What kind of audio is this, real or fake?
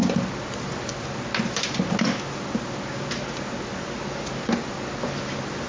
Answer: real